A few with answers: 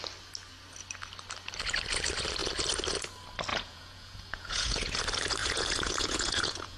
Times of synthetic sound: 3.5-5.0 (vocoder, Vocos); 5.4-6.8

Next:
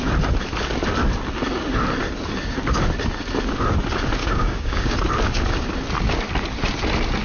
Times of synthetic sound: 4.2-4.9 (codec, DAC)

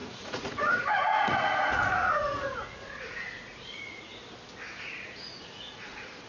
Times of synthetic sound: 0.0-4.1 (vocoder, Vocos); 4.8-6.3

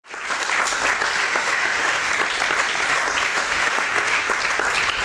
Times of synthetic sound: 1.2-2.1 (autoencoder, DAC-VAE); 3.2-4.3

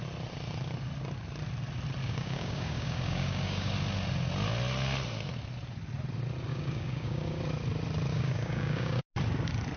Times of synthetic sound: 2.0-3.7 (codec, DAC); 6.5-7.4; 8.1-9.0